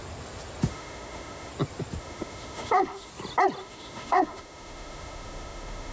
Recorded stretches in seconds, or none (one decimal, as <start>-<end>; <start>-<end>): 0.0-0.7; 1.5-2.0; 3.1-3.6